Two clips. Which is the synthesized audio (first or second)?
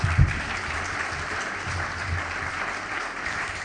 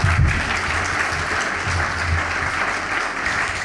first